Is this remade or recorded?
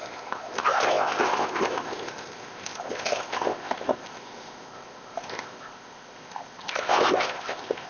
remade